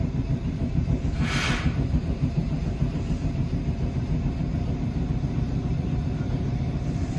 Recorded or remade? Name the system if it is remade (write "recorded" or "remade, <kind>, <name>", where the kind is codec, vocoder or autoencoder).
remade, vocoder, BigVGAN v2